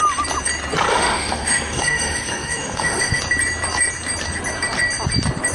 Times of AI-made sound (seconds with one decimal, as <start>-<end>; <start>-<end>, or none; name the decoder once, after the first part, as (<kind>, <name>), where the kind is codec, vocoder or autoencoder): 0.9-3.2 (autoencoder, DAC-VAE)